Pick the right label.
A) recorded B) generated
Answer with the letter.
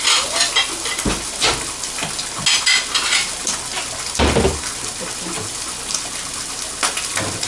A